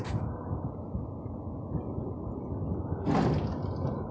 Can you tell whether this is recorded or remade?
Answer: recorded